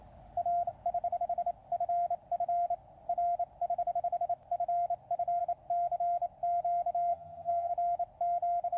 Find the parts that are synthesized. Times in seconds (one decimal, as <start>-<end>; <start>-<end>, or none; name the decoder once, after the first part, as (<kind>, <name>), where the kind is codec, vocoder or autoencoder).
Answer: 7.1-7.7 (vocoder, HiFi-GAN)